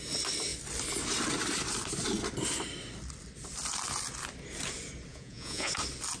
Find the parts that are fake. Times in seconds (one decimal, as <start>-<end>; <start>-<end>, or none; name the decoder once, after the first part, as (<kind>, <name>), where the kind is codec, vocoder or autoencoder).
5.1-5.7 (vocoder, Vocos)